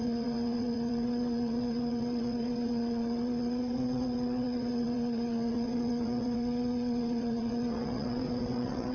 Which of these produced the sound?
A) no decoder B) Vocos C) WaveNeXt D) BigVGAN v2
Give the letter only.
C